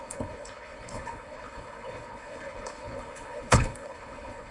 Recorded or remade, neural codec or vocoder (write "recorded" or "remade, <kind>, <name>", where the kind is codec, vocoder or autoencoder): remade, codec, HILCodec